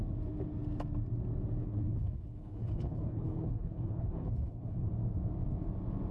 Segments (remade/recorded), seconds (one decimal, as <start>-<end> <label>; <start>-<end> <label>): 0.0-1.6 recorded; 1.6-4.9 remade; 4.9-6.1 recorded